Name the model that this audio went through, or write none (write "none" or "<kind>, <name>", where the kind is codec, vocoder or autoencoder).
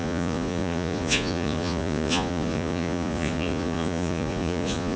vocoder, Vocos